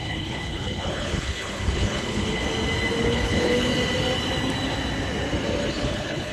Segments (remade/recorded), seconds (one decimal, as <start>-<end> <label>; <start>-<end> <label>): 0.0-2.4 remade; 2.4-3.0 recorded; 3.0-3.7 remade; 3.7-5.7 recorded; 5.7-6.3 remade